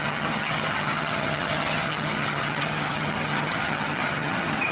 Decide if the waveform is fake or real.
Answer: fake